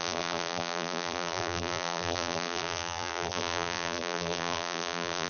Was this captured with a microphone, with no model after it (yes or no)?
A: no